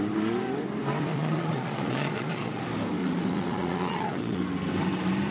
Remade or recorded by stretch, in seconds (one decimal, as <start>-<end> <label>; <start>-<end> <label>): 0.0-1.1 recorded; 1.1-2.6 remade; 2.6-3.0 recorded; 3.0-4.4 remade; 4.4-5.3 recorded